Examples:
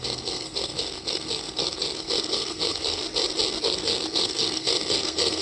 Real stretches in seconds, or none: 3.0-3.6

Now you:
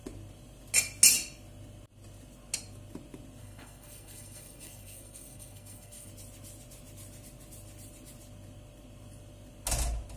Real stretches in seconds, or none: 0.0-3.4; 6.1-10.2

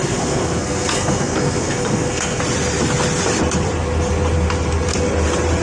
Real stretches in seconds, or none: 2.4-5.6

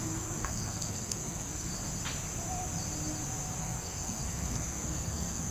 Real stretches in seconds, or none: 1.7-3.6

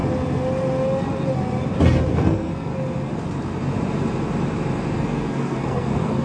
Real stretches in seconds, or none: 0.0-2.1; 2.7-4.9

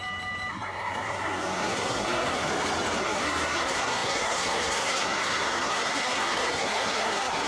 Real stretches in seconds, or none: 0.0-0.5; 2.5-3.0